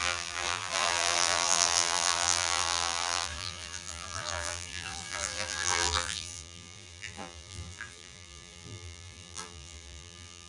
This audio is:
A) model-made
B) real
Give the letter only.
A